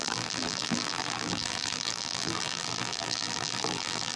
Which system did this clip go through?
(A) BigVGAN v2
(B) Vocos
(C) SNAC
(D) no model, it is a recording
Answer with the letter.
A